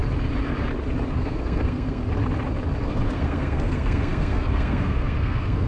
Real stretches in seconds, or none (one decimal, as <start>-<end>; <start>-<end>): 0.0-1.1; 2.0-2.8